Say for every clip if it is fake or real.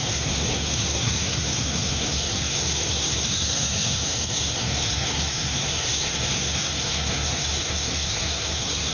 fake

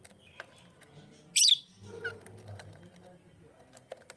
real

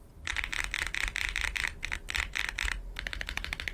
real